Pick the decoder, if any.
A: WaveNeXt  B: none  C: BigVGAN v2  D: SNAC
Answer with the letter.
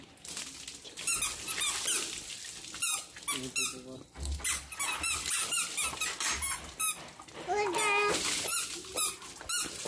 B